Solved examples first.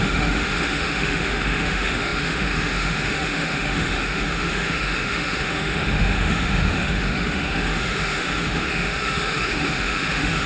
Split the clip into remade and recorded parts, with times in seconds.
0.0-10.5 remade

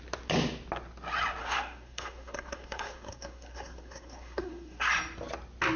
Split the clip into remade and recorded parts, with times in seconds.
0.0-1.4 recorded; 1.4-4.9 remade; 4.9-5.8 recorded

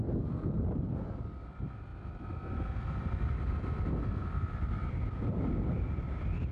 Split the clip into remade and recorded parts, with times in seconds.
0.0-6.5 recorded

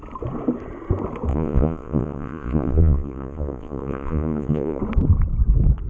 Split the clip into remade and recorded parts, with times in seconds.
0.0-1.3 recorded; 1.3-4.8 remade; 4.8-5.9 recorded

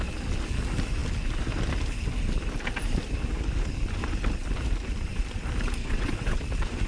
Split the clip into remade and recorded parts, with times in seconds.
0.0-5.8 recorded; 5.8-6.4 remade; 6.4-6.9 recorded

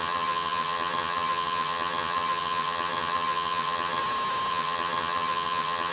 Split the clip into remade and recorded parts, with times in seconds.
0.0-4.0 remade; 4.0-4.5 recorded; 4.5-5.9 remade

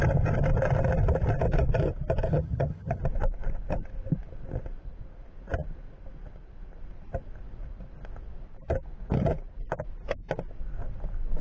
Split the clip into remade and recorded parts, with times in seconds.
0.0-2.3 recorded; 2.3-3.0 remade; 3.0-11.4 recorded

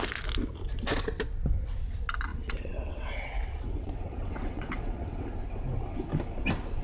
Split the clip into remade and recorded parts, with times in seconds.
0.0-2.3 recorded; 2.3-5.3 remade; 5.3-6.8 recorded